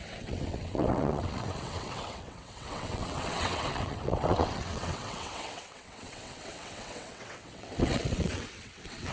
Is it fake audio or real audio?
fake